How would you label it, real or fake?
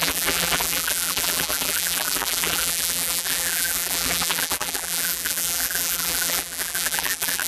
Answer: fake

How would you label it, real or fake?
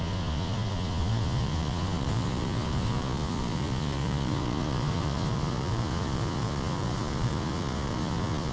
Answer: fake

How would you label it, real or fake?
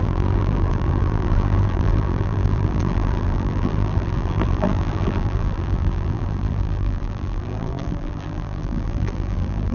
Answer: fake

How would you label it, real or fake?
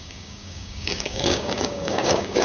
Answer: fake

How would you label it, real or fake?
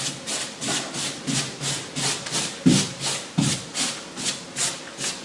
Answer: real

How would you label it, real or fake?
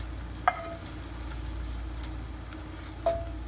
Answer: real